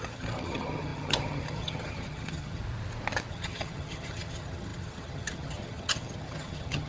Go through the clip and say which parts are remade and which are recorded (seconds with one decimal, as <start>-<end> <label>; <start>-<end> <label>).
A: 0.0-2.6 remade; 2.6-3.3 recorded; 3.3-6.9 remade